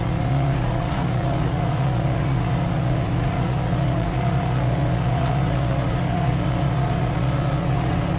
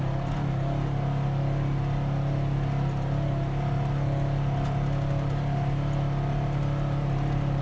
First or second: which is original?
second